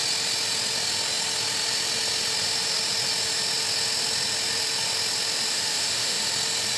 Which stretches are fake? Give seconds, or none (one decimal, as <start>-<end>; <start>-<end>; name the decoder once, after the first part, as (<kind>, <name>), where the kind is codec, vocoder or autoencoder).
5.5-6.2 (autoencoder, DAC-VAE)